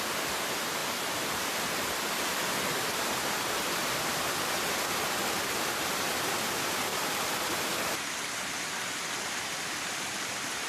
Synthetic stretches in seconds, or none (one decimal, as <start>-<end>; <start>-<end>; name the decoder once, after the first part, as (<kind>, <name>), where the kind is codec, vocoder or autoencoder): 0.0-0.8 (vocoder, BigVGAN v2); 5.3-6.9; 7.4-10.7